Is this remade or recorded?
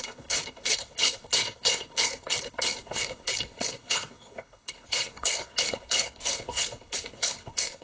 remade